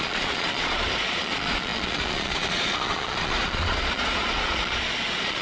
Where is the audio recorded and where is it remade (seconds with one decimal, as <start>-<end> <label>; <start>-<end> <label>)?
0.0-5.4 remade